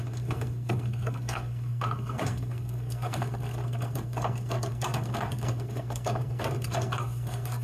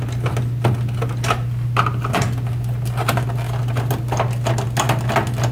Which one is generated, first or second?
first